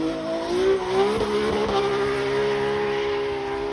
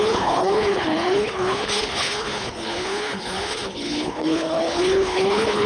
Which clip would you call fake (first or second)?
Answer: second